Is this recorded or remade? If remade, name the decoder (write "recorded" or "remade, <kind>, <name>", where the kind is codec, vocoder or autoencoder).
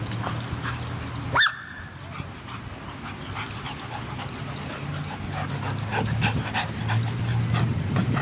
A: recorded